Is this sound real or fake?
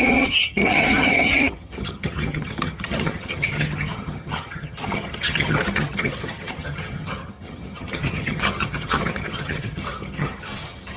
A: fake